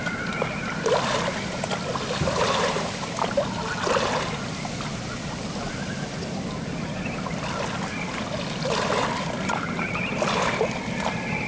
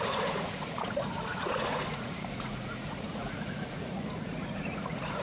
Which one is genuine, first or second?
first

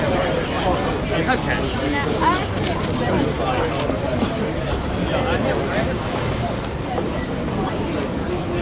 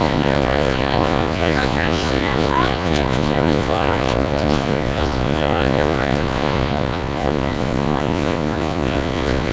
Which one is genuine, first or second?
first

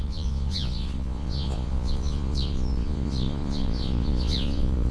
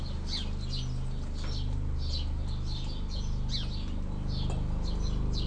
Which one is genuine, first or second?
second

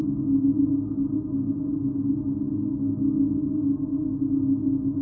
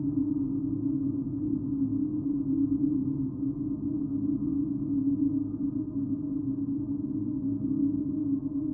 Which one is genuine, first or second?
first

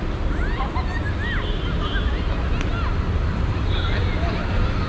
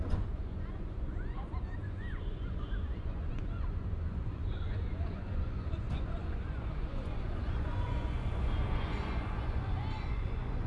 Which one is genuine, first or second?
first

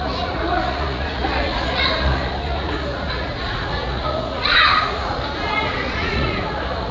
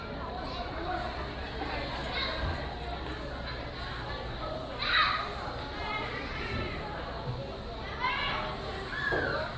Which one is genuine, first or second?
second